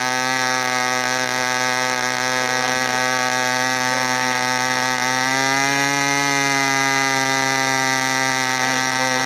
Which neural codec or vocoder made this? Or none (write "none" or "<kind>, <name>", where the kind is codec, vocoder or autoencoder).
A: none